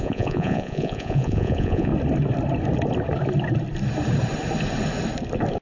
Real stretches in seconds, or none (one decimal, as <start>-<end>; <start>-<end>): 1.9-5.6